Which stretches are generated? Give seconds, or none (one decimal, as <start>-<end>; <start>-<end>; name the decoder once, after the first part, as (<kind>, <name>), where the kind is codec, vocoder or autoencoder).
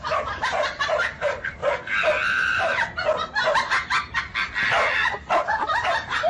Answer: 0.0-1.6 (vocoder, BigVGAN v2); 2.2-2.7; 5.6-6.3